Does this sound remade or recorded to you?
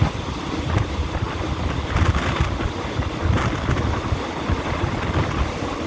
recorded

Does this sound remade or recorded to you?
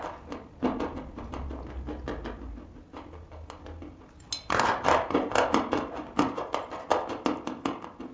recorded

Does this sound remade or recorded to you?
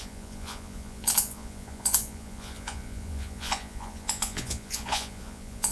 remade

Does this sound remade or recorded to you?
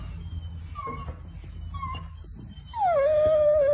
recorded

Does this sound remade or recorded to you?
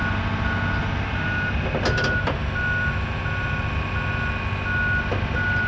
recorded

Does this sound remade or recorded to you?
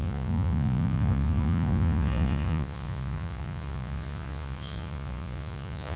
remade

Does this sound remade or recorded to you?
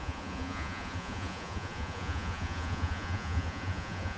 remade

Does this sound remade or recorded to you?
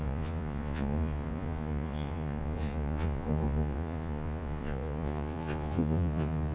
remade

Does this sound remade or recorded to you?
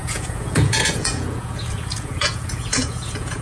remade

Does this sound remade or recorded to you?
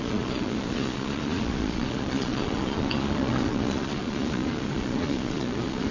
remade